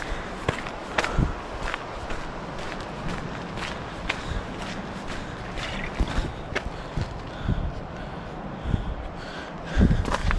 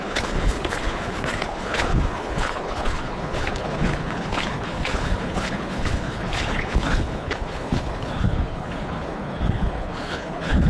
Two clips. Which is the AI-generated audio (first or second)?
second